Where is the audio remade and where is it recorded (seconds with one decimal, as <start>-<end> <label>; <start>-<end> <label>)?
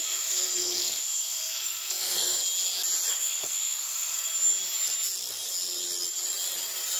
0.0-2.4 remade; 2.4-3.1 recorded; 3.1-4.3 remade; 4.3-7.0 recorded